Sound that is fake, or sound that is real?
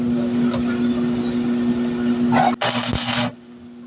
real